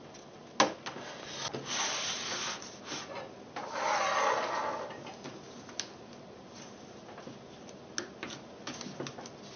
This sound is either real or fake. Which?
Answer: real